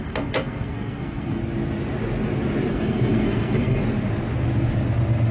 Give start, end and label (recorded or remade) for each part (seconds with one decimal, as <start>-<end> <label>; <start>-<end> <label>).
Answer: 0.0-1.4 remade; 1.4-2.7 recorded; 2.7-3.8 remade; 3.8-5.3 recorded